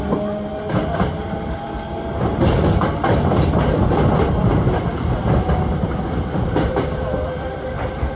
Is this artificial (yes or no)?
no